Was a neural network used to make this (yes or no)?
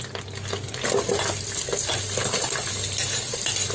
no